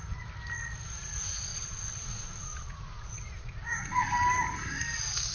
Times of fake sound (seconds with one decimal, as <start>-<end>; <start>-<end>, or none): 1.5-4.1